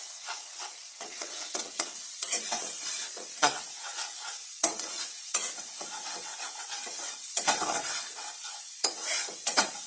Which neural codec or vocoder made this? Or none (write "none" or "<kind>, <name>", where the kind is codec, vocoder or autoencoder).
vocoder, WaveNeXt